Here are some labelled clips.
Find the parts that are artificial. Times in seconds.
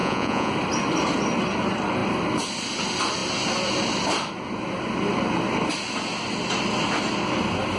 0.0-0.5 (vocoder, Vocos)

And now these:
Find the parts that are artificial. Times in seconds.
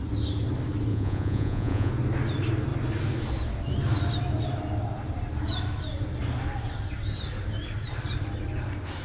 0.9-1.9 (vocoder, Vocos)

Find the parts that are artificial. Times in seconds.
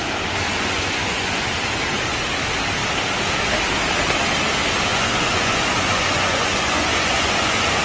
0.5-1.5 (vocoder, Vocos); 4.9-7.8